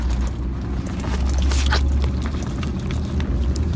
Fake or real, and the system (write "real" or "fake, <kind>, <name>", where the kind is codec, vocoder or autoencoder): real